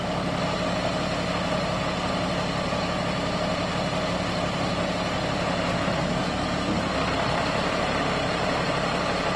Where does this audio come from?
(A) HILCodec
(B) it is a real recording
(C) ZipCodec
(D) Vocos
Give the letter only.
B